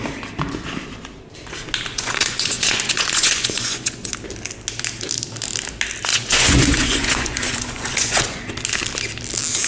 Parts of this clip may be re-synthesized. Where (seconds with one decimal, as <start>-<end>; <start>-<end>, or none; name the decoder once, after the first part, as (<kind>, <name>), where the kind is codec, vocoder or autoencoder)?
1.9-4.1 (vocoder, Vocos); 6.1-8.5